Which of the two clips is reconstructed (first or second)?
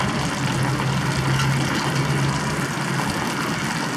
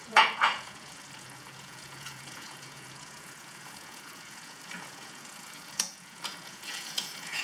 second